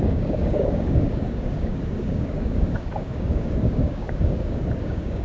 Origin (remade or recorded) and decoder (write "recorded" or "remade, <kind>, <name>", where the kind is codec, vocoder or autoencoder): remade, codec, DAC